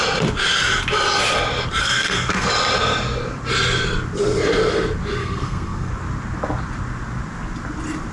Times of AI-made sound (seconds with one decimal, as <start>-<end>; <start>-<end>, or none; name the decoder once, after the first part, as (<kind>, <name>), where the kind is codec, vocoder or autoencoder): 1.8-2.5 (codec, SNAC); 5.2-5.9